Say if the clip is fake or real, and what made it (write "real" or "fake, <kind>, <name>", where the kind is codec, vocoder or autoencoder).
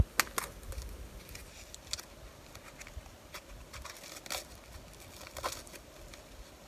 real